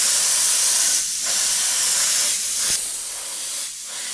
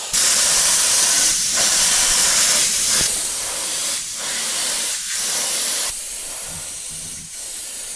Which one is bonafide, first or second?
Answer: first